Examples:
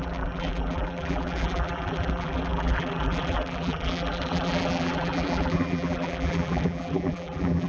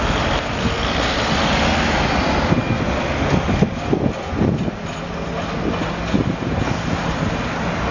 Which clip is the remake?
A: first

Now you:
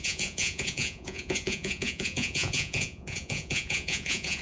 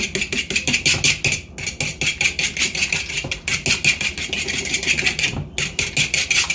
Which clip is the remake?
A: first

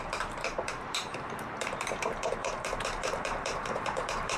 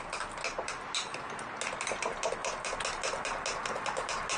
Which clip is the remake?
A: first